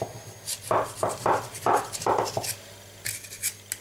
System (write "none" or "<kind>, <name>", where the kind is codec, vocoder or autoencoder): none